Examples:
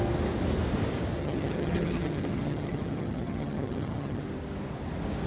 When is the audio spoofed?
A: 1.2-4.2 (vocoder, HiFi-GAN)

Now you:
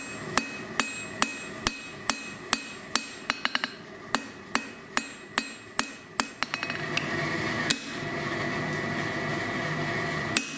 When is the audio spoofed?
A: none

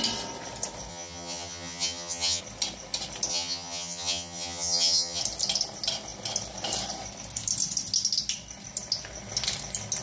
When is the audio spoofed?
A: 0.9-2.4 (vocoder, HiFi-GAN); 3.3-5.2

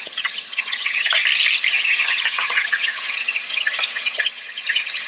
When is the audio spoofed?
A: 0.0-1.2 (vocoder, HiFi-GAN); 1.7-5.1

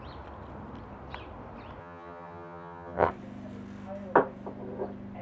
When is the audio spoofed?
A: 1.8-3.1 (vocoder, HiFi-GAN)

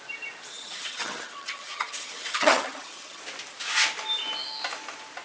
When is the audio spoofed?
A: 0.5-3.2 (vocoder, HiFi-GAN)

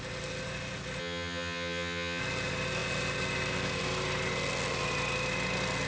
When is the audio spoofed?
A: 1.0-2.2 (vocoder, HiFi-GAN)

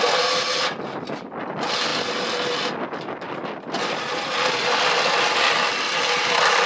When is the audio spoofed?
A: none